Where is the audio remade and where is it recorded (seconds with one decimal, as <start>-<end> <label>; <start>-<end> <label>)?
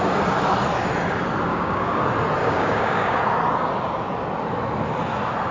0.0-1.5 recorded; 1.5-2.0 remade; 2.0-2.4 recorded; 2.4-3.2 remade; 3.2-5.5 recorded